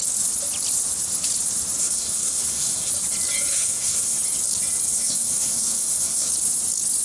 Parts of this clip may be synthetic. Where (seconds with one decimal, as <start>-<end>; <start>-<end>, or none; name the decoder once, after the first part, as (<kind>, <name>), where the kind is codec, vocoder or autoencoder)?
1.8-2.9 (codec, SNAC); 3.5-4.2; 4.9-6.3